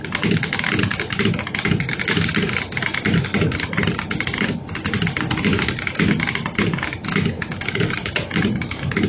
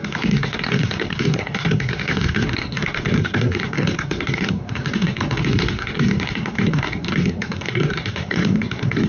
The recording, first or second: first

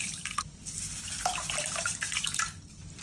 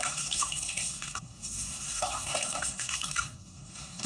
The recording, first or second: first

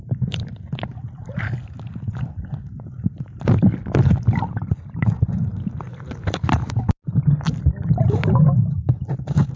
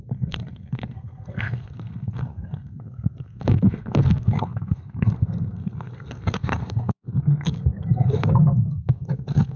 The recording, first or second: first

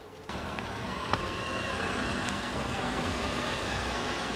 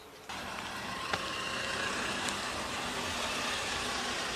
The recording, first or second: second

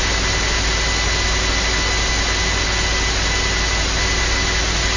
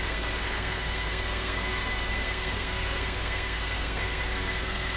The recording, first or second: first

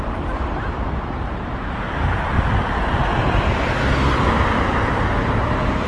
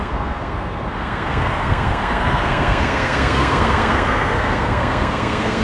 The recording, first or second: first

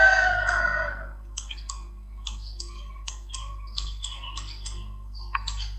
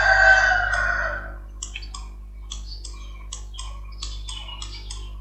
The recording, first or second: second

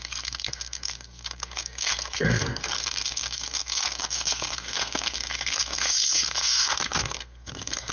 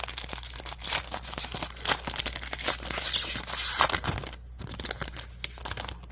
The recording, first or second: second